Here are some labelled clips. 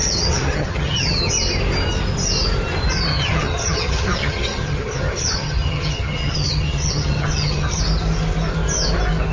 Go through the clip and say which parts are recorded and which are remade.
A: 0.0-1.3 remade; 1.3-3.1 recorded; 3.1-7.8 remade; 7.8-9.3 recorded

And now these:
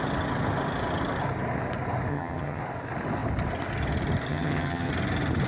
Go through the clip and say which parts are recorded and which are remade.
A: 0.0-2.1 recorded; 2.1-2.6 remade; 2.6-4.3 recorded; 4.3-4.9 remade; 4.9-5.5 recorded

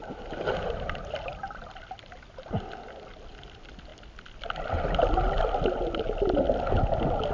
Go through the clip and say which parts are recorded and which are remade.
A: 0.0-7.3 recorded

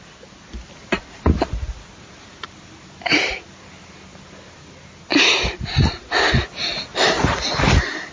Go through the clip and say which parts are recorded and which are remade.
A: 0.0-8.1 recorded

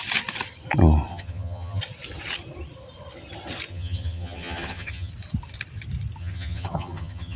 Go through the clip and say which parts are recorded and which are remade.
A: 0.0-1.1 recorded; 1.1-1.8 remade; 1.8-3.7 recorded; 3.7-5.1 remade; 5.1-6.2 recorded; 6.2-7.4 remade

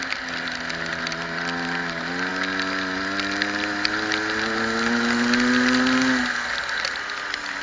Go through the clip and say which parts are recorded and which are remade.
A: 0.0-7.6 recorded

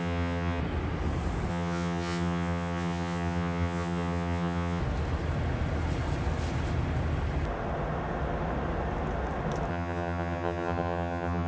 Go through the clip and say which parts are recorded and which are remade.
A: 0.0-0.6 remade; 0.6-1.5 recorded; 1.5-4.8 remade; 4.8-9.7 recorded; 9.7-11.5 remade